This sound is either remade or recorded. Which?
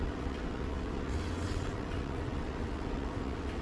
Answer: remade